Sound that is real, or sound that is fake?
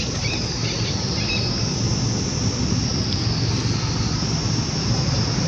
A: real